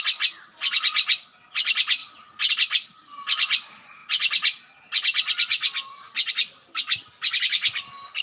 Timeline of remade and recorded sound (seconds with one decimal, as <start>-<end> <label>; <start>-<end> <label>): 0.0-8.2 recorded